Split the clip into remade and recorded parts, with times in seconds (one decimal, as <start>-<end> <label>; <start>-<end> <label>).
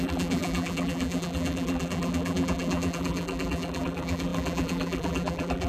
0.0-5.7 remade